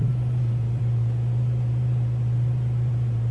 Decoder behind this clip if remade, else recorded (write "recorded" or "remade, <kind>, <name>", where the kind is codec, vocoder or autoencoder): remade, vocoder, BigVGAN v2